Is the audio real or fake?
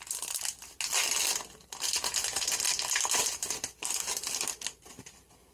real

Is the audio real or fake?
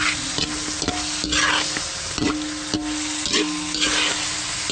real